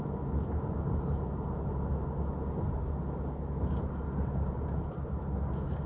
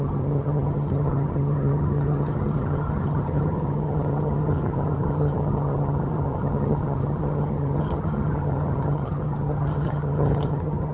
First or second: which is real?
first